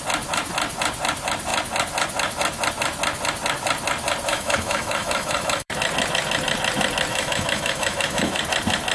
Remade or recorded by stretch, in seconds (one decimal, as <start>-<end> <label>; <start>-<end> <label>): 0.0-4.3 recorded; 4.3-5.7 remade; 5.7-7.1 recorded; 7.1-8.4 remade; 8.4-8.9 recorded

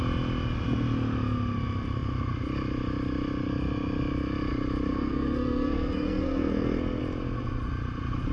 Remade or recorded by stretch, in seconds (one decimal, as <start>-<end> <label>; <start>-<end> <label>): 0.0-4.9 recorded; 4.9-7.0 remade; 7.0-8.3 recorded

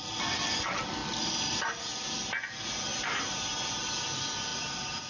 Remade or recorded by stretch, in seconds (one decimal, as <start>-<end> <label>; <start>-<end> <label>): 0.0-1.0 recorded; 1.0-1.8 remade; 1.8-2.9 recorded; 2.9-3.7 remade; 3.7-4.5 recorded; 4.5-5.1 remade

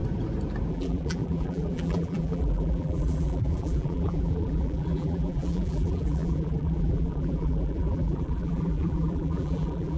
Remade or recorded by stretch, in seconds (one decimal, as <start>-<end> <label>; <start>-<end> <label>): 0.0-0.7 recorded; 0.7-10.0 remade

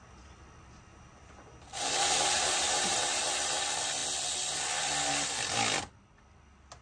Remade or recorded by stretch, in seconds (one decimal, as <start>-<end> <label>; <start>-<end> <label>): 0.0-0.9 recorded; 0.9-3.2 remade; 3.2-6.8 recorded

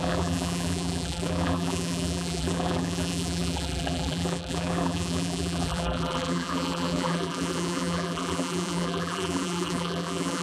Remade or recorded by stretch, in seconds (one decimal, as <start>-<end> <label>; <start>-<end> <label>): 0.0-10.4 remade